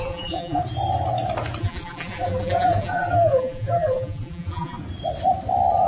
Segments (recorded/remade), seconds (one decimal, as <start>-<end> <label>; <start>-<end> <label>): 0.0-0.6 remade; 0.6-1.6 recorded; 1.6-4.8 remade; 4.8-5.9 recorded